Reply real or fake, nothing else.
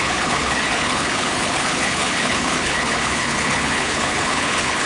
fake